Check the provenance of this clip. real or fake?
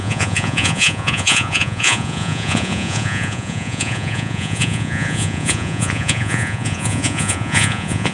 fake